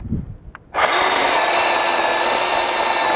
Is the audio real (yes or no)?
yes